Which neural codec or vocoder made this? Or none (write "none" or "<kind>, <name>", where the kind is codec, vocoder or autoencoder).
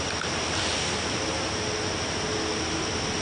none